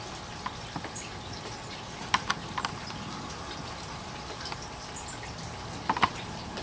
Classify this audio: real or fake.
real